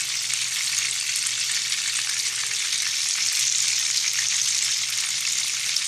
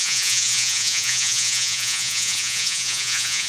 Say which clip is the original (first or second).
first